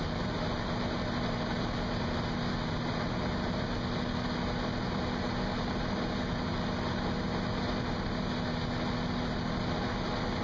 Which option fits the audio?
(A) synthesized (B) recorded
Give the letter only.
B